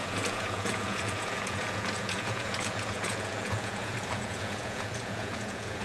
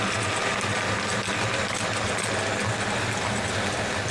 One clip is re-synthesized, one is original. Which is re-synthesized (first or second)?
first